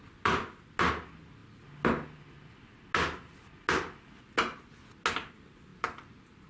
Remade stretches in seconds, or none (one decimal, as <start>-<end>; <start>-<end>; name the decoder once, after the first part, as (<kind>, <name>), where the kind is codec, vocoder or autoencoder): 5.7-6.5 (vocoder, BigVGAN v2)